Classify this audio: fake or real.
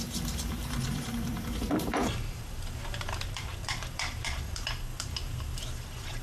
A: fake